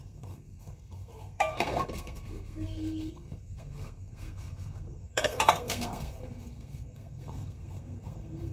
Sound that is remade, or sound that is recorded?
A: remade